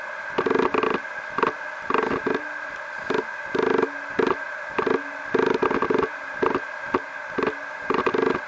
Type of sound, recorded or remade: recorded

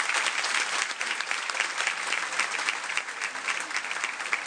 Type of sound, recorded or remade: recorded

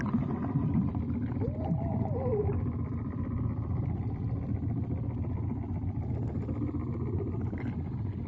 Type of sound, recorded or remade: recorded